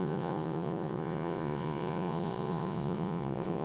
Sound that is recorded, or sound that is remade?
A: remade